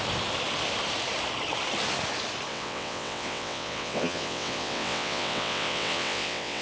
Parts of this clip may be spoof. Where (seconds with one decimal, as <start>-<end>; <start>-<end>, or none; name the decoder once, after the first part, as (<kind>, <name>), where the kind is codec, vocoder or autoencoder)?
2.5-6.6 (vocoder, WaveNeXt)

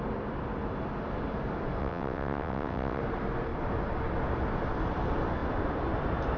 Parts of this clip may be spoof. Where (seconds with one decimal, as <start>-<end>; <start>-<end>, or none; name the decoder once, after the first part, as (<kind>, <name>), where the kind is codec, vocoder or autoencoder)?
1.8-3.0 (vocoder, WaveNeXt)